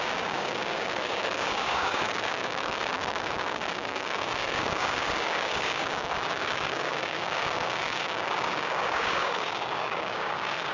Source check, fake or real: fake